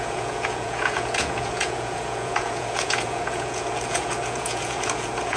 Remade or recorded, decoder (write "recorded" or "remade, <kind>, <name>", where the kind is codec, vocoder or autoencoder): remade, vocoder, Vocos